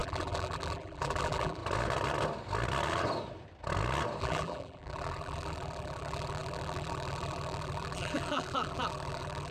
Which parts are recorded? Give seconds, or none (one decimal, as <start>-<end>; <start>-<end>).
1.6-4.2

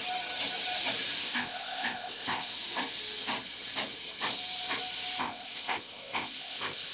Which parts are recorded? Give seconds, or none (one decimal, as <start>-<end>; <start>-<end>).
0.0-1.2; 2.5-5.2